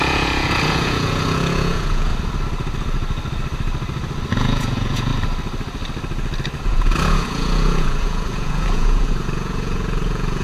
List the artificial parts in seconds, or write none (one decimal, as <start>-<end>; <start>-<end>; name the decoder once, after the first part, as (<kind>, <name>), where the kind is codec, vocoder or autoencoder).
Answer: 0.0-2.1 (vocoder, Vocos); 4.3-5.1; 6.6-10.4